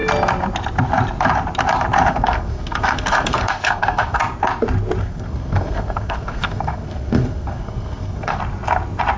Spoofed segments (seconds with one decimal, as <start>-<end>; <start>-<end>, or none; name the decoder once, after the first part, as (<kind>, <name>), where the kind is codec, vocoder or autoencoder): 2.1-4.2 (codec, SNAC); 5.0-8.4